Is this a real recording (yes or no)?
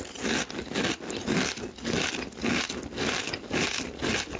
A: yes